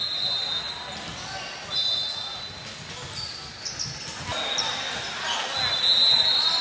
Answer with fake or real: real